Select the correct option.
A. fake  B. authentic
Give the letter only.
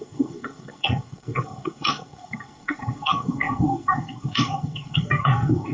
A